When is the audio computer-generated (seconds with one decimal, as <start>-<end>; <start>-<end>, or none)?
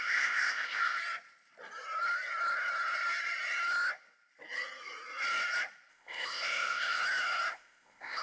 0.0-1.0; 5.9-7.0; 7.5-8.2